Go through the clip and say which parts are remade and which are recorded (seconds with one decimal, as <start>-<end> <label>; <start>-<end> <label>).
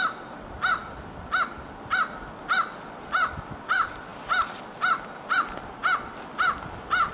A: 0.0-7.1 recorded